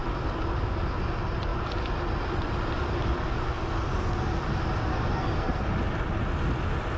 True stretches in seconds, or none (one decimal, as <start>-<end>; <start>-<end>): 0.0-4.9; 5.6-7.0